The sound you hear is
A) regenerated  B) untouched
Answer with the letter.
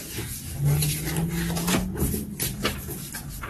B